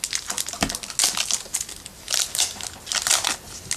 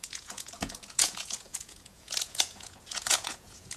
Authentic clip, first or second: first